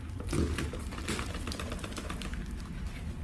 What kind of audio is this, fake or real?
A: real